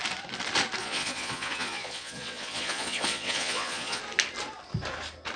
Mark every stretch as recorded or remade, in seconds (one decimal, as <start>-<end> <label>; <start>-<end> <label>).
0.0-0.8 recorded; 0.8-4.0 remade; 4.0-5.4 recorded